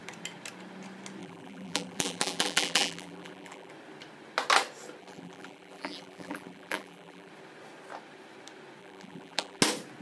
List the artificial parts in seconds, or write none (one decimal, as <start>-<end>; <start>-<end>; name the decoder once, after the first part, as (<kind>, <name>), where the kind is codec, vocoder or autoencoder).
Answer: 1.2-3.7 (vocoder, BigVGAN v2); 5.0-7.3; 8.8-9.6